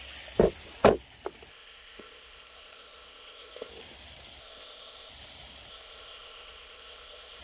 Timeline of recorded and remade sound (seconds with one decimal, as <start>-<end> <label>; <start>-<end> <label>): 0.0-1.5 recorded; 1.5-3.7 remade; 3.7-4.4 recorded; 4.4-5.1 remade; 5.1-5.7 recorded; 5.7-7.4 remade